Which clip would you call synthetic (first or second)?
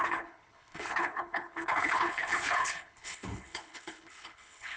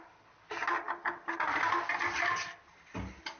first